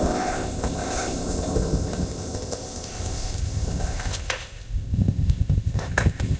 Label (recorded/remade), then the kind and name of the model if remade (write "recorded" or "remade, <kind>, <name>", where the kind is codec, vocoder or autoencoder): remade, codec, ZipCodec